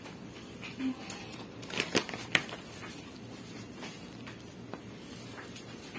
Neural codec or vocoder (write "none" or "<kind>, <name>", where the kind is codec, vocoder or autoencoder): none